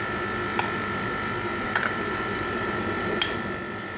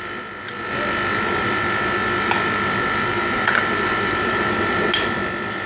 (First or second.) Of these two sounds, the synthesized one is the first